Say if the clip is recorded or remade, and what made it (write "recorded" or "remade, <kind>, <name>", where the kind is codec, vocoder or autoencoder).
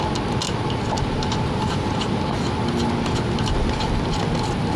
recorded